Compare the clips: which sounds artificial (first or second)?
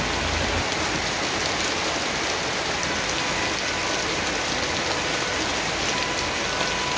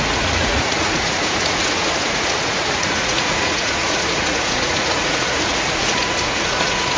second